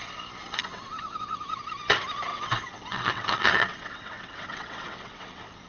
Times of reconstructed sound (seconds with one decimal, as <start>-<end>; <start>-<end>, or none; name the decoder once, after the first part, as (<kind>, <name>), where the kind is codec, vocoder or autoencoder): 0.6-1.6 (vocoder, WaveNeXt); 2.3-5.7